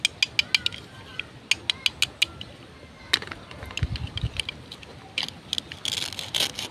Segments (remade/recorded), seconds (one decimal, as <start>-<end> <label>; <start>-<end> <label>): 0.0-6.7 recorded